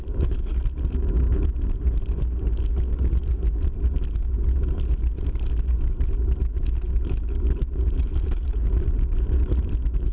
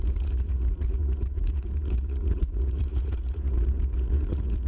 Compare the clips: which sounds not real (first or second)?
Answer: second